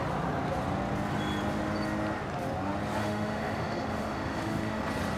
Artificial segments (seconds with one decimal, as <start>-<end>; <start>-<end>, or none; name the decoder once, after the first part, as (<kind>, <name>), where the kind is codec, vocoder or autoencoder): 3.0-4.8 (autoencoder, DAC-VAE)